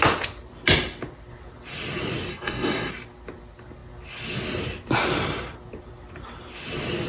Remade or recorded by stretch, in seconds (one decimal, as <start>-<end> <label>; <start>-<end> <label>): 0.0-2.3 recorded; 2.3-2.9 remade; 2.9-7.1 recorded